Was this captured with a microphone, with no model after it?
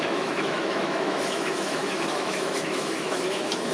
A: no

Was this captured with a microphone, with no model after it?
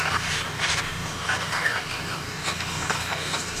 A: no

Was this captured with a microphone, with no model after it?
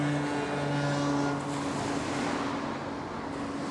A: yes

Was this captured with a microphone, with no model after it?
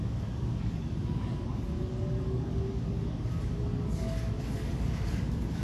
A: no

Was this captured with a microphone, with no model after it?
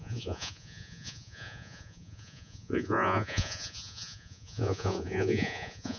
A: no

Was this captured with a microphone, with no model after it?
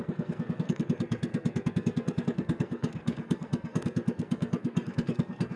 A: no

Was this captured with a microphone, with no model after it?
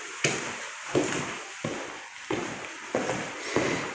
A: yes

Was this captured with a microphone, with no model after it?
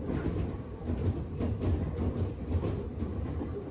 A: yes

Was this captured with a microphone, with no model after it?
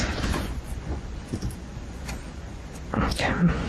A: no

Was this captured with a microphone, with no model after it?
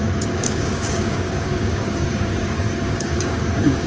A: no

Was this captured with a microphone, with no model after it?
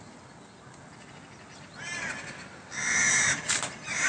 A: yes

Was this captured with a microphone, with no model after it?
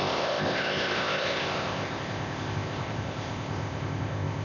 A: no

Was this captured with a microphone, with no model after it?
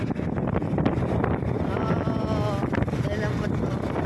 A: yes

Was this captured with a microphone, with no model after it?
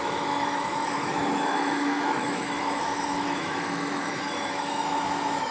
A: no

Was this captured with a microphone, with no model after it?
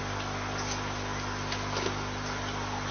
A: yes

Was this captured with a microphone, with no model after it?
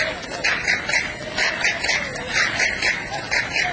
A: yes